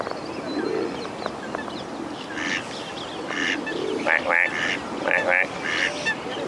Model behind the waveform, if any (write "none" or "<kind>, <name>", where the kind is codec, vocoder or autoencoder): none